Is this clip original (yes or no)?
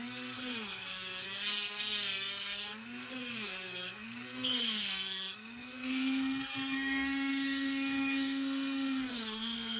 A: no